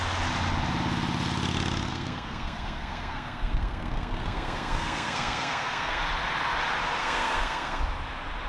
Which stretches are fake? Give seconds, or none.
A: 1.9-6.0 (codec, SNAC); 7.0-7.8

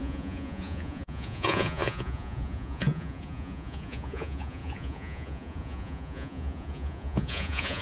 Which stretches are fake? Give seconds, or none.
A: 0.0-7.8 (vocoder, Vocos)

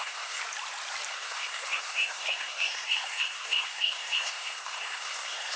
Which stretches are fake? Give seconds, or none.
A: 0.0-0.4 (codec, SNAC); 1.1-5.6

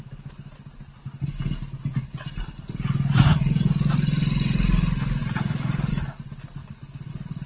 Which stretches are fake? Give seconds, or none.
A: 1.0-1.9 (vocoder, BigVGAN v2); 3.3-3.9; 5.2-5.9; 6.6-7.1